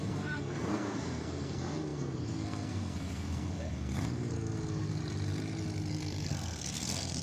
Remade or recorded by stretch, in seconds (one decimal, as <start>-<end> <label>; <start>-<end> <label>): 0.0-5.0 remade; 5.0-5.9 recorded; 5.9-7.2 remade